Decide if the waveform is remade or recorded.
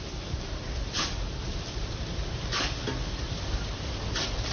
recorded